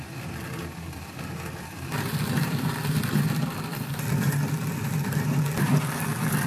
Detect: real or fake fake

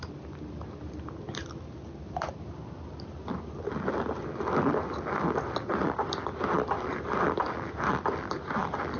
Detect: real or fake fake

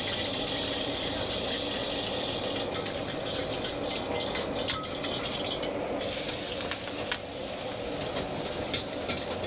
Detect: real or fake real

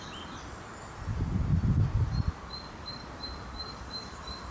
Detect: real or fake fake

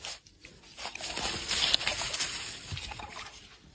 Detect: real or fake real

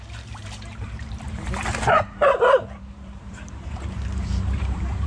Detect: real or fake fake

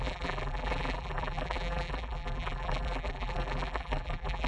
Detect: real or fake fake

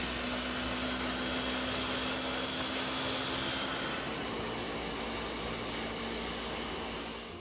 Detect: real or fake real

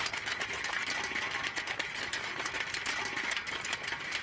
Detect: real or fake real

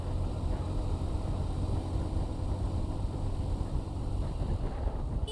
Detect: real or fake fake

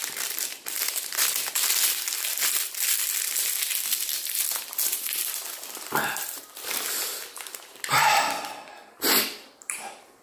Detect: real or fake fake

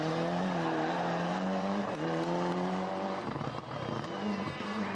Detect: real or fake fake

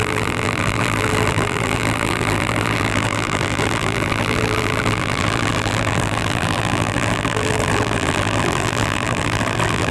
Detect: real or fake fake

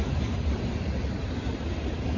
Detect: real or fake fake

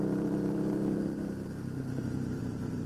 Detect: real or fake fake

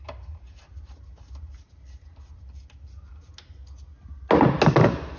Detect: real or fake real